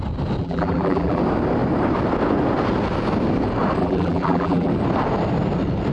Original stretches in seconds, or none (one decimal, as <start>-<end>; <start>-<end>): 0.0-0.4; 1.2-3.8; 4.7-5.9